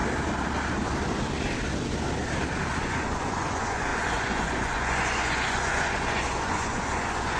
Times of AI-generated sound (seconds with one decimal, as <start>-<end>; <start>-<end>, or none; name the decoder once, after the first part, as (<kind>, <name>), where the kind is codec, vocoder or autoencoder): 2.8-7.4 (vocoder, Vocos)